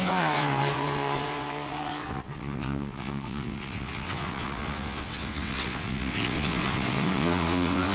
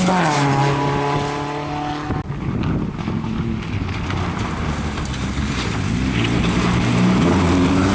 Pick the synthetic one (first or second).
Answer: first